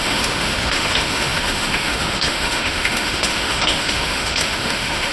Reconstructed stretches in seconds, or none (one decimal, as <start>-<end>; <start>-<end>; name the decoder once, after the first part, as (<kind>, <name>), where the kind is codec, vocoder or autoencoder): 0.0-5.1 (autoencoder, DAC-VAE)